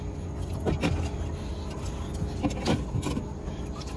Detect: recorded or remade recorded